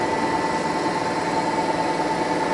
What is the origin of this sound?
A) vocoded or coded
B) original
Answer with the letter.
B